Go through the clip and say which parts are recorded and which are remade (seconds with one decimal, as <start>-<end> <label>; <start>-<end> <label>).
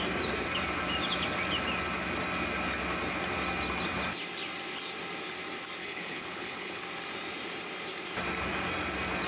0.0-5.8 recorded; 5.8-6.8 remade; 6.8-9.3 recorded